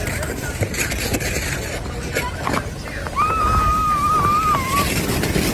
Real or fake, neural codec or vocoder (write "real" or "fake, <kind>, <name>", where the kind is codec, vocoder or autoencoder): real